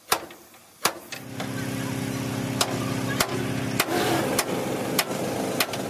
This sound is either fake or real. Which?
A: real